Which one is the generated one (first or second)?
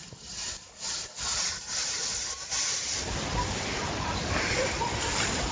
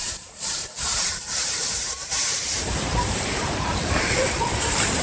second